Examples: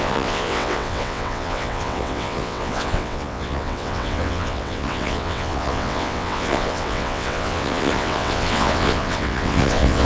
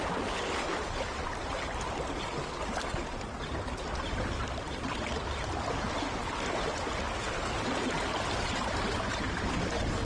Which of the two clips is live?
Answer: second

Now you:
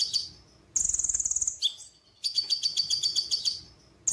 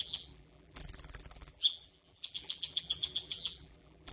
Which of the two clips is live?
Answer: first